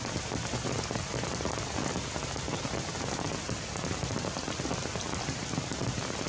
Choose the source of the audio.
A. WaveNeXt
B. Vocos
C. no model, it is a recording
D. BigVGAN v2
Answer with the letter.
C